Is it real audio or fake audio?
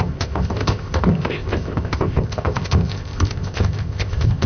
fake